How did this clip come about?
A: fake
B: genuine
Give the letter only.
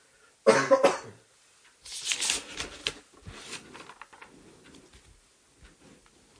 B